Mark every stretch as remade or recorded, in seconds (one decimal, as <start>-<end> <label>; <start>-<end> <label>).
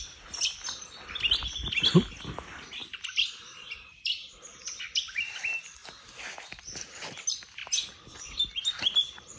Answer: 0.0-9.4 recorded